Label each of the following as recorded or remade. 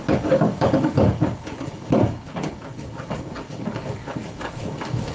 remade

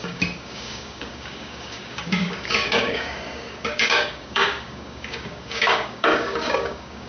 remade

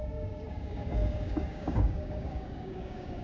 remade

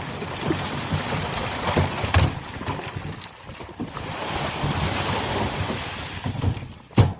recorded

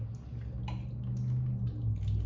recorded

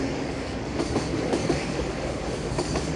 remade